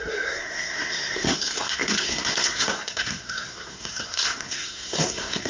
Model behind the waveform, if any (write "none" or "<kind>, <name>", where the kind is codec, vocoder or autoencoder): codec, SNAC